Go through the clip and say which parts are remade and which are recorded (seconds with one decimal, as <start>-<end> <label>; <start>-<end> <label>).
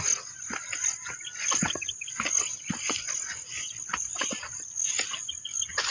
0.0-1.3 recorded; 1.3-2.0 remade; 2.0-3.9 recorded; 3.9-5.9 remade